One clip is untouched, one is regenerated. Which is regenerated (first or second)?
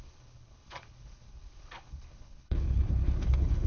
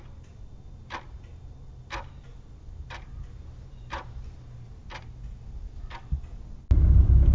first